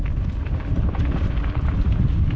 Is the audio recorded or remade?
recorded